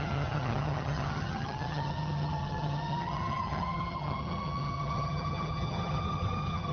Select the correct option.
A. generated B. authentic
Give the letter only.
A